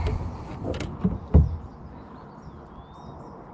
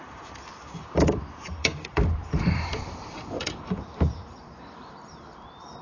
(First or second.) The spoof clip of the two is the second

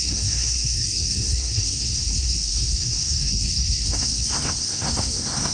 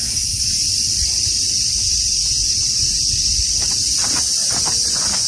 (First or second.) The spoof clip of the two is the first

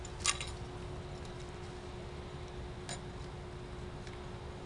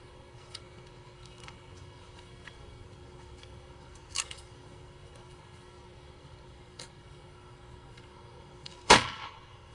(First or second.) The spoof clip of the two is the second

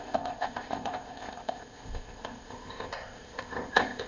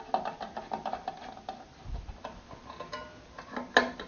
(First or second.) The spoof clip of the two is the first